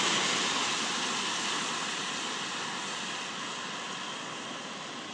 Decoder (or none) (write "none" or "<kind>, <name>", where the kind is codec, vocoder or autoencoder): none